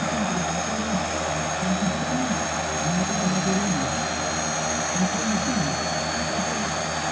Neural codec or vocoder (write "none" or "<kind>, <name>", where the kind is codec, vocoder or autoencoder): none